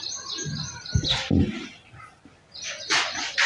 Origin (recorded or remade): recorded